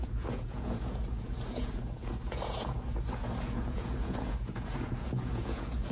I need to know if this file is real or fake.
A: fake